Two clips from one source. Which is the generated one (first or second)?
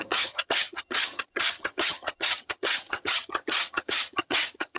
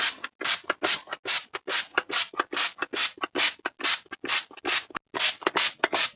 first